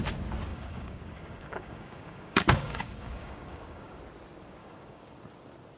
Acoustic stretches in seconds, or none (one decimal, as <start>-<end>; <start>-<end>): 0.0-0.5; 4.0-4.6; 5.2-5.8